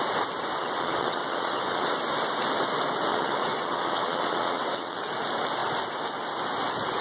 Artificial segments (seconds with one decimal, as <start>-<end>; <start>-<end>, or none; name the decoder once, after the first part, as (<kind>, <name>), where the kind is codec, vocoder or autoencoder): 0.6-1.9 (vocoder, WaveNeXt); 3.1-5.0